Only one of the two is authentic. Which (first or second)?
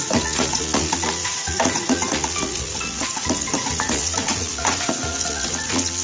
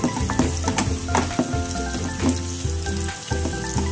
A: second